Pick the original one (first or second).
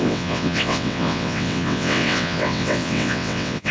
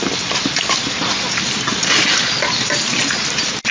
second